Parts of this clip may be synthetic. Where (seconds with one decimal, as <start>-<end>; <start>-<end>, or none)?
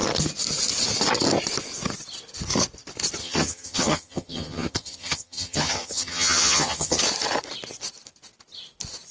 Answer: 3.2-7.0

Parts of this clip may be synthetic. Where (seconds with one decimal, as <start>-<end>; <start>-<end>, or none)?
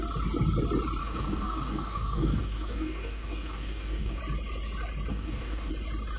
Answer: 1.0-4.2; 5.1-5.7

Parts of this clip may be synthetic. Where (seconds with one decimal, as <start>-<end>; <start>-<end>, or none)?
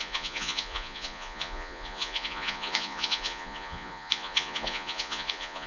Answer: 0.0-5.7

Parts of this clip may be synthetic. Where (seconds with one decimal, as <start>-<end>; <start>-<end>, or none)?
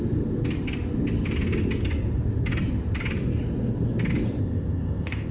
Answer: 4.4-5.3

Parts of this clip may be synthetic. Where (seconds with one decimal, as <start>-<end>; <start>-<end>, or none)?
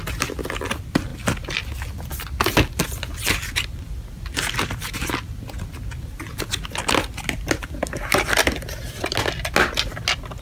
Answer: none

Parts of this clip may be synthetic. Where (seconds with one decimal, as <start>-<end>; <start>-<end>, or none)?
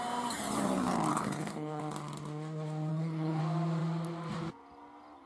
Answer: 1.1-1.8; 2.9-3.4